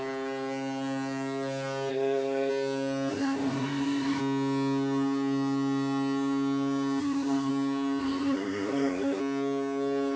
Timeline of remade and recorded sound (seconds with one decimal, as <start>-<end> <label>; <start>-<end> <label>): 0.0-1.9 recorded; 1.9-2.5 remade; 2.5-3.1 recorded; 3.1-4.2 remade; 4.2-7.0 recorded; 7.0-7.5 remade; 7.5-8.0 recorded; 8.0-9.2 remade; 9.2-10.2 recorded